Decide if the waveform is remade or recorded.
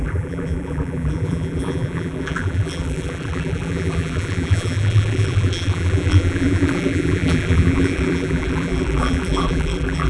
remade